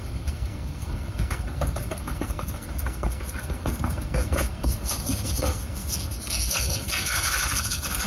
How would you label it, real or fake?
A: fake